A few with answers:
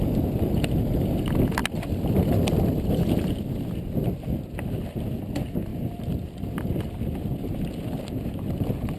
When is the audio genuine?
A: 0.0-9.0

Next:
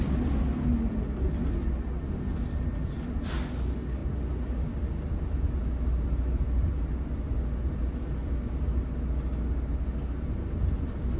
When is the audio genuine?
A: 0.0-11.2